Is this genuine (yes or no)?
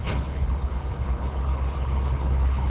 no